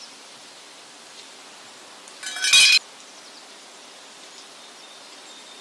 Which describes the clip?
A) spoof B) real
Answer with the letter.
B